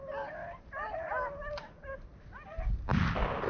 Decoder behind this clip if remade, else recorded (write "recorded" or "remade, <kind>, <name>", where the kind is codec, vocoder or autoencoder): recorded